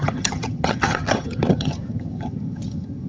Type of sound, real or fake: fake